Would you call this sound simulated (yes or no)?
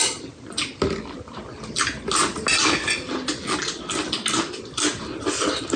no